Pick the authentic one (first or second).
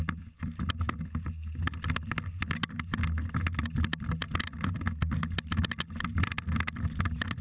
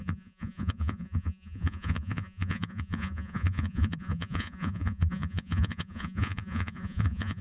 first